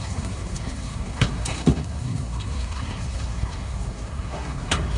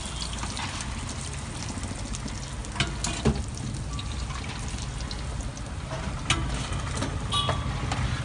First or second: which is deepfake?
first